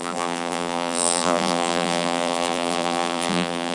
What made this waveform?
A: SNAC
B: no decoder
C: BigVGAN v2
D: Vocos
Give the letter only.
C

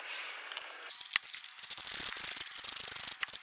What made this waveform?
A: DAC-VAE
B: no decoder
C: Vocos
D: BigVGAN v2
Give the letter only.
B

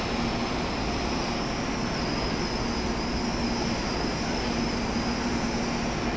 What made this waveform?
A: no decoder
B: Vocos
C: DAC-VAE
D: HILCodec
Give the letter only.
A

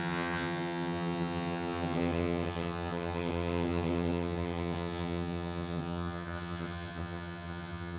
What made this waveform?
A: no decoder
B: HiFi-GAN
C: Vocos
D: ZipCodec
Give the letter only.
B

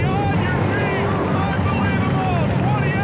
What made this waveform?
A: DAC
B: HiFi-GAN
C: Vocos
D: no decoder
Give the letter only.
D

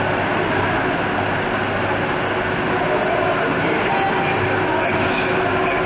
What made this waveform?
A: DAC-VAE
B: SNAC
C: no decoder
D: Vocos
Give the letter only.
C